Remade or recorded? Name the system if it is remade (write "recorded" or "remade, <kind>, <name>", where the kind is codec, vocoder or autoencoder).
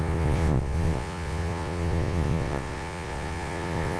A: remade, vocoder, Vocos